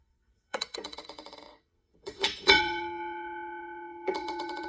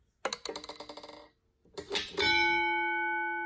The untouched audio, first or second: second